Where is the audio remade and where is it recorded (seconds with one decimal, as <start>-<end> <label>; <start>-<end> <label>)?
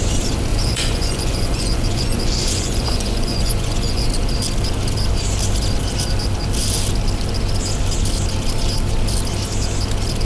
0.0-0.5 recorded; 0.5-4.1 remade; 4.1-10.2 recorded